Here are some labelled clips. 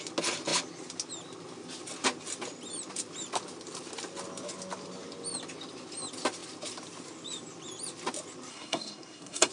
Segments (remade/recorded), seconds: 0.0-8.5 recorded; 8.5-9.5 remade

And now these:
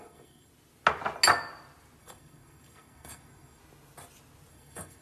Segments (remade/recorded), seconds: 0.0-0.5 remade; 0.5-2.0 recorded; 2.0-3.6 remade; 3.6-4.5 recorded; 4.5-5.0 remade

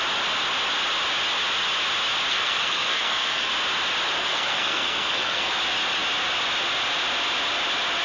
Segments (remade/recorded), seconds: 0.0-2.3 recorded; 2.3-3.5 remade; 3.5-4.2 recorded; 4.2-5.5 remade; 5.5-8.0 recorded